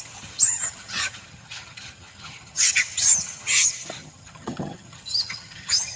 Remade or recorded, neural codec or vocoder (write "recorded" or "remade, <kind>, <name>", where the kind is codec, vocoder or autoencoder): remade, vocoder, HiFi-GAN